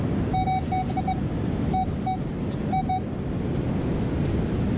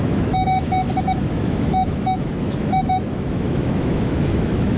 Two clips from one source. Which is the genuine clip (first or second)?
first